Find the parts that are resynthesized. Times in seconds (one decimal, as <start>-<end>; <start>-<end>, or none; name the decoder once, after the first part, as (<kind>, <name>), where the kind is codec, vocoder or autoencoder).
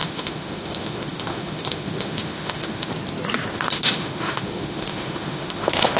0.0-2.9 (autoencoder, DAC-VAE); 3.5-6.0